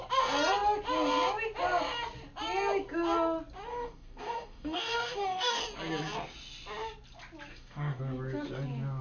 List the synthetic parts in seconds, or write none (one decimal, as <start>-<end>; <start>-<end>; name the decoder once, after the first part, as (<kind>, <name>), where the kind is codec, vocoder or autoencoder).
3.7-5.6 (codec, DAC); 7.5-8.0